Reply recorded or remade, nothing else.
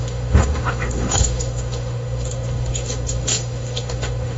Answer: remade